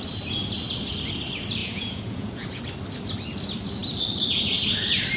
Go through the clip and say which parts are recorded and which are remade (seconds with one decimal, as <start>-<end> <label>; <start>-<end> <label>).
0.0-1.6 recorded; 1.6-2.6 remade; 2.6-5.2 recorded